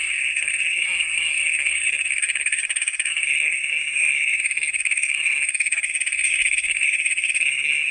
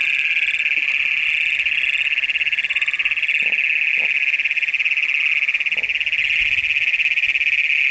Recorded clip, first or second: second